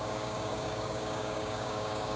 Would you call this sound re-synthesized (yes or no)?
yes